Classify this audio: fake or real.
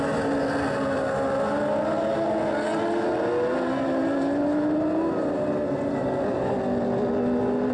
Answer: real